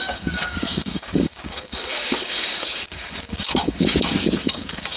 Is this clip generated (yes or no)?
yes